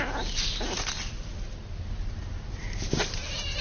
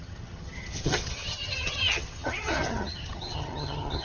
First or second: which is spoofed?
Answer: second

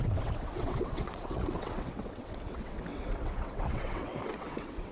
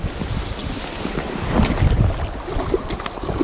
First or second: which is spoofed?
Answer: first